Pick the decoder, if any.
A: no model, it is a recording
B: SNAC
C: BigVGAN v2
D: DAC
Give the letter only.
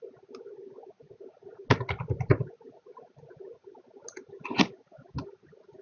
A